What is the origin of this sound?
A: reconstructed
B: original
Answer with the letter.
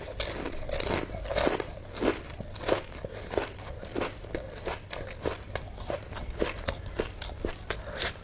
B